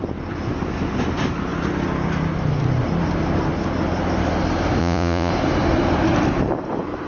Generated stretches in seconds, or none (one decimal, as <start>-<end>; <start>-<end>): 4.8-5.3